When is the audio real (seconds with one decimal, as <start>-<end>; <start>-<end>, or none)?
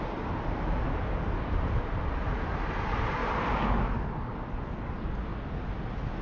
0.0-6.2